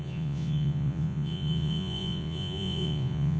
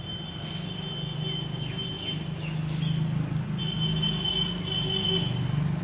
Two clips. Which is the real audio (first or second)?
second